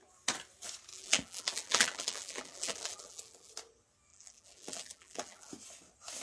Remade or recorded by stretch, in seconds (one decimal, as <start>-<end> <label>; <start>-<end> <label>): 0.0-0.9 recorded; 0.9-3.5 remade; 3.5-4.1 recorded; 4.1-5.5 remade; 5.5-6.2 recorded